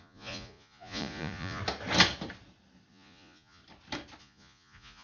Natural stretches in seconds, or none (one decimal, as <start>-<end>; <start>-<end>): 1.6-2.9; 3.6-4.2